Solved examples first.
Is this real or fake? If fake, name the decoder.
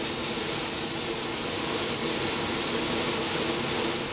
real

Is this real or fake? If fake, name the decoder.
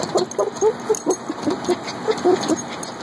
real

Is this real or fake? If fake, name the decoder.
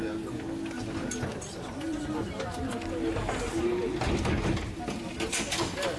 real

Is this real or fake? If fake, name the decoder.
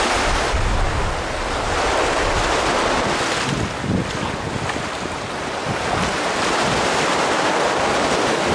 real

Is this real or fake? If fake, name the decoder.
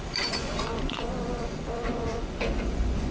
fake, vocoder, Vocos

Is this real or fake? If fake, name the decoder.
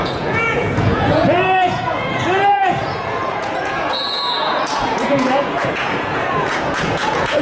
fake, vocoder, Vocos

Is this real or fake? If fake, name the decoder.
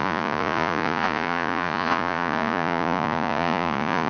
fake, vocoder, Vocos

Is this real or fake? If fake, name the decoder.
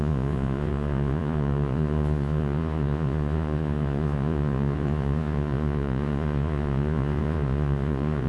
fake, vocoder, Vocos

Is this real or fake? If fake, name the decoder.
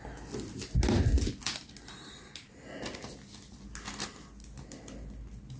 real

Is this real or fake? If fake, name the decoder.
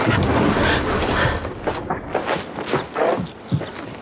real